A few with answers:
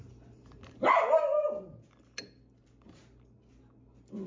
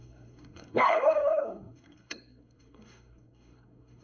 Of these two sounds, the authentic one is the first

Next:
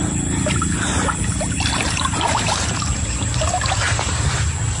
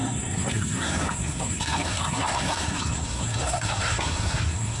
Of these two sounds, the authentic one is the first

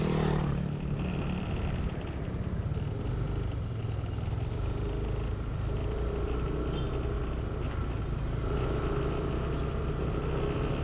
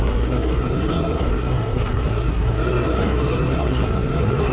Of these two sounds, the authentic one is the first